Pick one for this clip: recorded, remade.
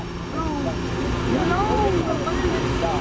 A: recorded